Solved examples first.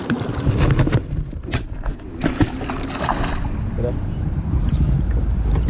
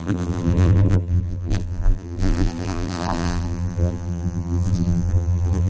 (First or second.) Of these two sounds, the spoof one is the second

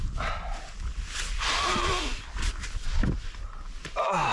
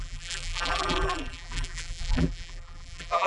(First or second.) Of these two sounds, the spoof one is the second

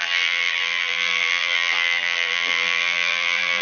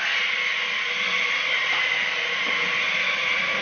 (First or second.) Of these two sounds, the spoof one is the first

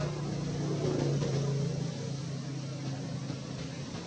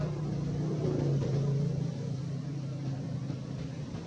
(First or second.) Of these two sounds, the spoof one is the second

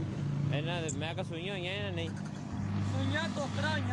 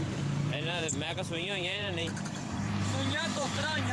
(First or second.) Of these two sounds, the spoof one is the second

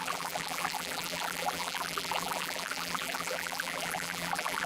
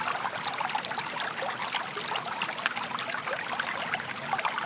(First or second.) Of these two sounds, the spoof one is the first